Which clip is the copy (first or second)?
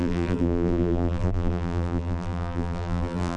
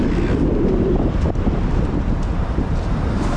first